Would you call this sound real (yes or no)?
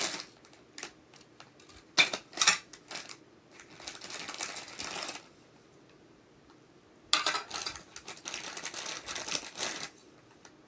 yes